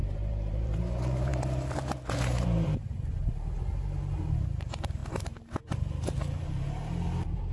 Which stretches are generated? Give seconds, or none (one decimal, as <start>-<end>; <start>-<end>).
0.0-7.5